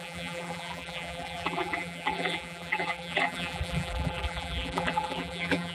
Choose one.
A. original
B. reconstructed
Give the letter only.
B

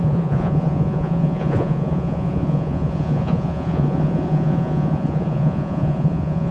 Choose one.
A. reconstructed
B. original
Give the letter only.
A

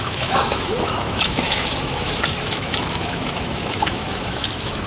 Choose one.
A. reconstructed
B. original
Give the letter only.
A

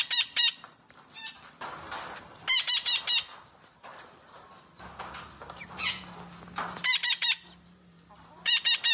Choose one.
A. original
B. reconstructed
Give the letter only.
A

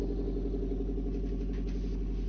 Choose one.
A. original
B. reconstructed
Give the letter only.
A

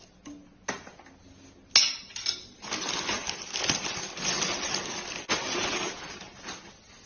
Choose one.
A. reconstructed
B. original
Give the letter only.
B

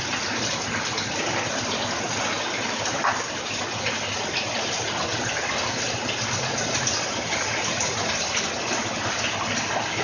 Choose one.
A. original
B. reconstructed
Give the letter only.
A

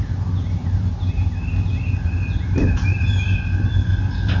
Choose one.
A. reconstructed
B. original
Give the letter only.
B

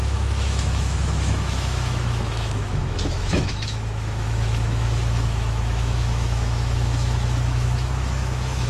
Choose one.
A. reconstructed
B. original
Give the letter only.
A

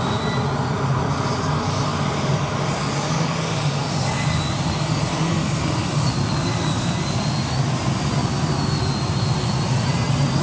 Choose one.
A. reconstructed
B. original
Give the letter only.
B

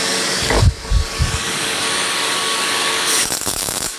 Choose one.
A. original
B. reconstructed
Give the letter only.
B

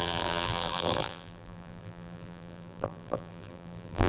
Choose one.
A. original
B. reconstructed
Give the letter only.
B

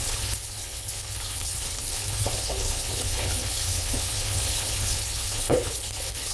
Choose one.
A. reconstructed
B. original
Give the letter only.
A